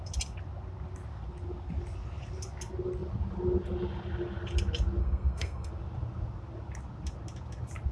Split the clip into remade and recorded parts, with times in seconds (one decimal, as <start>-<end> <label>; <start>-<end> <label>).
0.0-5.0 recorded; 5.0-5.7 remade; 5.7-7.9 recorded